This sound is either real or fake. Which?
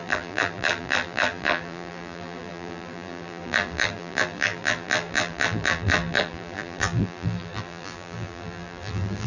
fake